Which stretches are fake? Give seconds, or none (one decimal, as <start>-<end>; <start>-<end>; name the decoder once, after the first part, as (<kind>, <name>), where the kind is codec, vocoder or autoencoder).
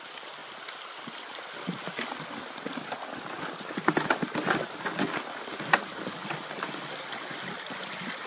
6.2-7.1 (vocoder, BigVGAN v2)